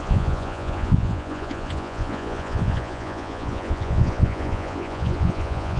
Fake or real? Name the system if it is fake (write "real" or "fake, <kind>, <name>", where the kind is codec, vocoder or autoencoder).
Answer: fake, vocoder, Vocos